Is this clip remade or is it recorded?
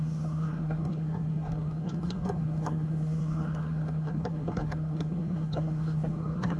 remade